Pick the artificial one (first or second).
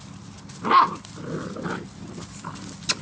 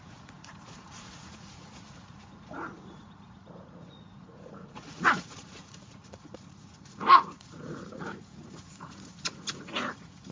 second